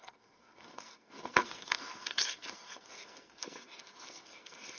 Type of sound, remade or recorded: remade